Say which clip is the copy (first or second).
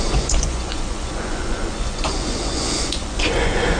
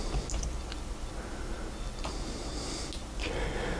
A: first